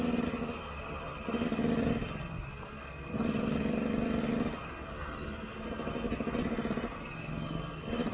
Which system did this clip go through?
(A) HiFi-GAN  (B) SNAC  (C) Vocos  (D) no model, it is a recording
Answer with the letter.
D